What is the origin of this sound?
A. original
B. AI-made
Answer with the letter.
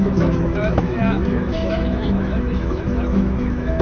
B